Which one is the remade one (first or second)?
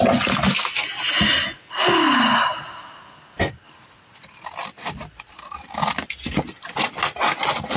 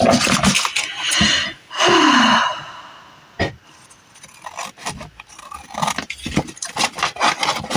second